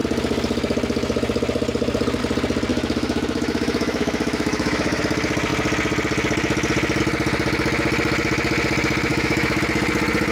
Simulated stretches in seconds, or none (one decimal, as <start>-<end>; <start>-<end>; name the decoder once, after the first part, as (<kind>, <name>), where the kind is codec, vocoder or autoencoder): 2.7-5.0 (autoencoder, DAC-VAE); 9.1-9.6